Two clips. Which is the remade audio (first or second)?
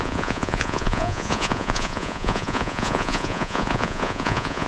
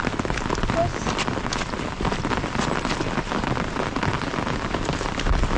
first